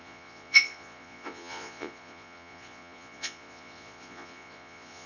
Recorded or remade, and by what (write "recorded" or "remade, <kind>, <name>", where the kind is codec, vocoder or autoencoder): remade, vocoder, Vocos